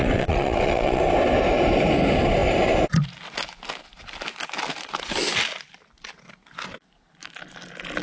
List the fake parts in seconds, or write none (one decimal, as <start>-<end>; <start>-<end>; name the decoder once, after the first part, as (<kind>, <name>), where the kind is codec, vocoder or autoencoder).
0.0-1.0 (vocoder, WaveNeXt)

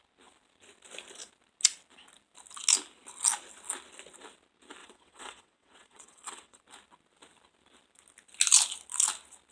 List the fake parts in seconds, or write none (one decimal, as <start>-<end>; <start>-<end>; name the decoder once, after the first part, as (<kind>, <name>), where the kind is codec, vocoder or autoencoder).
4.8-6.6 (vocoder, WaveNeXt)